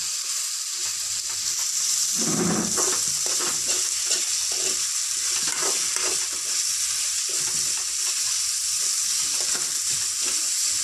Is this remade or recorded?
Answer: recorded